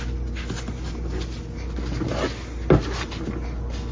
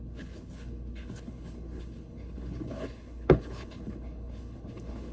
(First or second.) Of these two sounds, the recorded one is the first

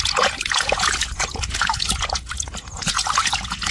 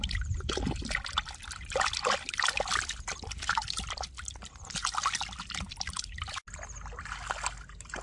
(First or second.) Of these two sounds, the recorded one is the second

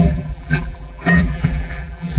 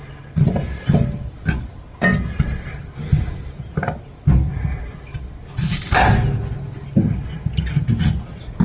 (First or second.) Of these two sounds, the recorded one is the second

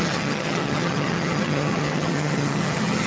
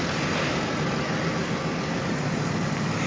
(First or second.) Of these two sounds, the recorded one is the second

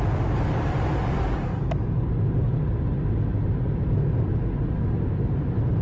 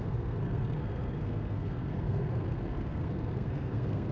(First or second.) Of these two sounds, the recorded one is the first